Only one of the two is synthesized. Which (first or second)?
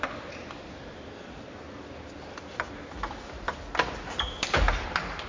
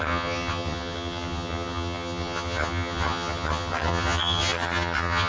second